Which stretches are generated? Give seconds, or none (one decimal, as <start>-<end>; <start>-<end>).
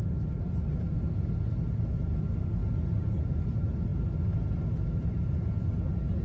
none